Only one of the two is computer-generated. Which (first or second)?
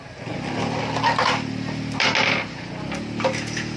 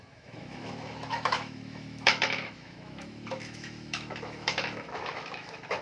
second